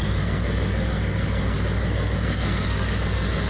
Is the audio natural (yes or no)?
no